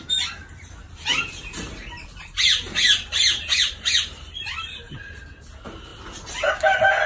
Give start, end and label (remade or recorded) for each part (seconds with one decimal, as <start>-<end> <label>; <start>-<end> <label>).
0.0-0.8 recorded; 0.8-5.1 remade; 5.1-7.1 recorded